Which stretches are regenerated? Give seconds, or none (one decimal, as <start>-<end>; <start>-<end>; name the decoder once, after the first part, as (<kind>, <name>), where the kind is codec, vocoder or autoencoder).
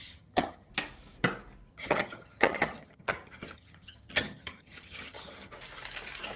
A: 0.0-0.7 (vocoder, HiFi-GAN); 1.7-5.5